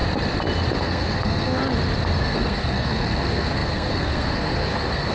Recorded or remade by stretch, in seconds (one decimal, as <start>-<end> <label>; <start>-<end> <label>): 0.0-0.8 recorded; 0.8-1.6 remade; 1.6-2.2 recorded; 2.2-5.1 remade